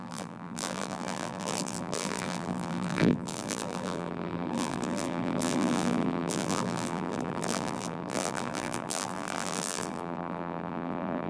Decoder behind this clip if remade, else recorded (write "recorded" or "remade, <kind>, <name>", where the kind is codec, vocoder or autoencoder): remade, vocoder, BigVGAN v2